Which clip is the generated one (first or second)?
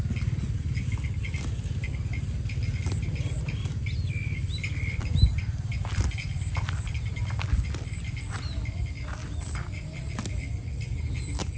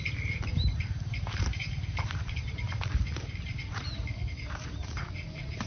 second